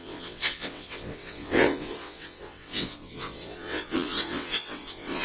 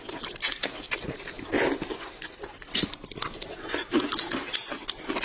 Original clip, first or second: second